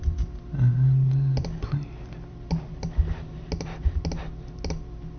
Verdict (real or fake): real